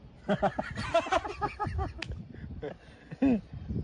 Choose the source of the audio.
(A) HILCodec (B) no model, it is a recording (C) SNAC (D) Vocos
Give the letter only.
B